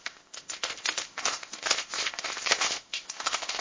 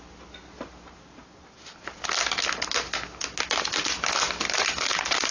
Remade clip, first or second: first